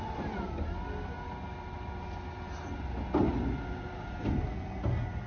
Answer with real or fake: real